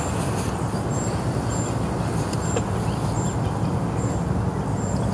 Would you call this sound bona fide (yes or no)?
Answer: yes